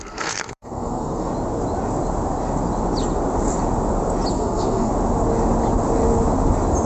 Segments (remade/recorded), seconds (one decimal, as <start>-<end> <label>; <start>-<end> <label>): 0.0-1.3 remade; 1.3-4.3 recorded; 4.3-4.9 remade; 4.9-6.9 recorded